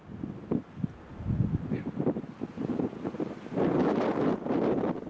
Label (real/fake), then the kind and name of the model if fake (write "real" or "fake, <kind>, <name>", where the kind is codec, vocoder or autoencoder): real